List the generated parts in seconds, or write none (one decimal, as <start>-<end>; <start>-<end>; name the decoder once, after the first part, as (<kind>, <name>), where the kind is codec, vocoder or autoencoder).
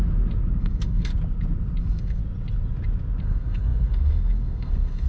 0.6-1.1 (codec, SNAC); 1.8-2.2; 3.2-5.1